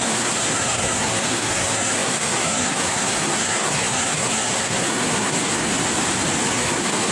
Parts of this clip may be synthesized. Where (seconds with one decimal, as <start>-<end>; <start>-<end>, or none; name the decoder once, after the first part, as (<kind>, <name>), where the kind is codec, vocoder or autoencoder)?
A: 0.0-5.7 (codec, SNAC); 6.5-7.1